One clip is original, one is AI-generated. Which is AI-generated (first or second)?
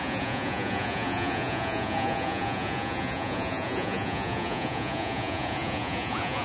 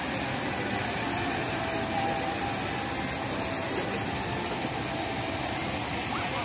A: first